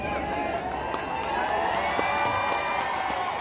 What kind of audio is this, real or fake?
real